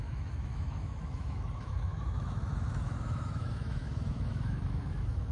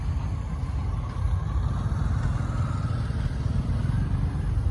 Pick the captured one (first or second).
second